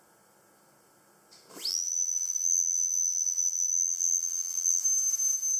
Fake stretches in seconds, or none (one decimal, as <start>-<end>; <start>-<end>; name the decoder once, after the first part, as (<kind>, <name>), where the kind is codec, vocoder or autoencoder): 1.7-4.8 (vocoder, BigVGAN v2)